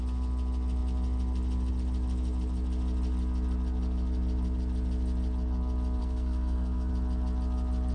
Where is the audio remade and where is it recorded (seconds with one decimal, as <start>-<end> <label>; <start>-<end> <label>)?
0.0-6.0 recorded; 6.0-6.9 remade; 6.9-7.9 recorded